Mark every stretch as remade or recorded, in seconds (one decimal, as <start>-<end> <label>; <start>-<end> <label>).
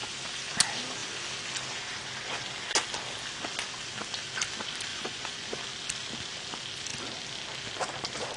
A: 0.0-4.9 recorded; 4.9-5.6 remade; 5.6-8.4 recorded